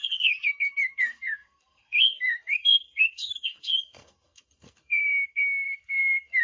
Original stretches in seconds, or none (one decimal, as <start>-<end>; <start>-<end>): none